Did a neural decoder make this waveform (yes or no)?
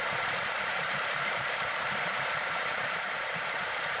yes